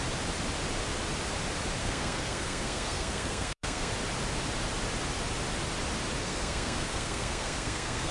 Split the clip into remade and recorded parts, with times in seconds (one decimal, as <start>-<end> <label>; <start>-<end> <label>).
0.0-1.8 recorded; 1.8-3.9 remade; 3.9-6.2 recorded; 6.2-8.1 remade